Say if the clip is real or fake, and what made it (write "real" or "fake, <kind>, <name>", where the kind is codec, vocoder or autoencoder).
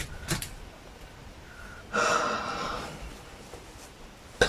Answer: real